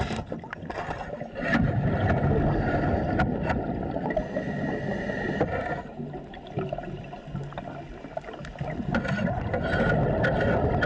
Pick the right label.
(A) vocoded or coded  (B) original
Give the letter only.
B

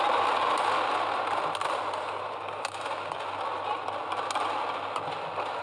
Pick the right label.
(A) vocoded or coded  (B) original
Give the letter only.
B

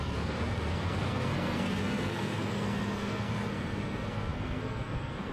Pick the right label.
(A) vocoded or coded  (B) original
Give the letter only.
A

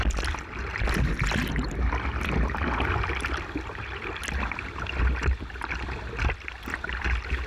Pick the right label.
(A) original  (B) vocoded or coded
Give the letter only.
A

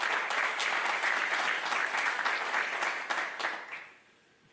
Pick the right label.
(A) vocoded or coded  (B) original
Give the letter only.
B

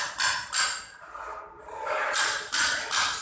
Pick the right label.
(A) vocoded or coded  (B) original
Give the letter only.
B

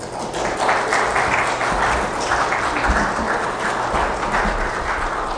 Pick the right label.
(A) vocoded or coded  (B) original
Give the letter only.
B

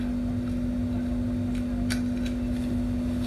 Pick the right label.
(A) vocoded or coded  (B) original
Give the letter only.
B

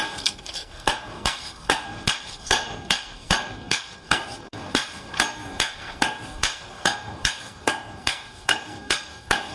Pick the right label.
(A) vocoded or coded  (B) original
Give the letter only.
A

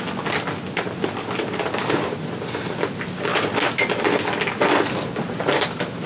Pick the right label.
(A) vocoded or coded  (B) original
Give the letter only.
B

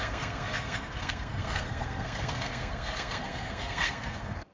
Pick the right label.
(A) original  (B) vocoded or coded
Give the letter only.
B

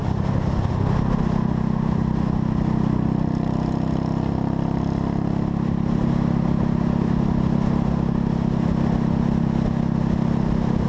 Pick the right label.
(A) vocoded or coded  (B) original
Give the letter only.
B